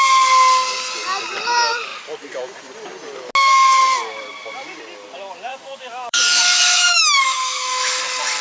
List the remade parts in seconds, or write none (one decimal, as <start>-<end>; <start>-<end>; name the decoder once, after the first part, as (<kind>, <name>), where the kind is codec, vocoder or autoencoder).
5.5-8.0 (autoencoder, DAC-VAE)